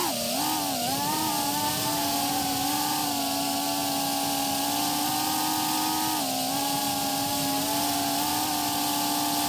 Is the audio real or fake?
real